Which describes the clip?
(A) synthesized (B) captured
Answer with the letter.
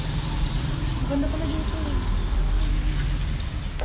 B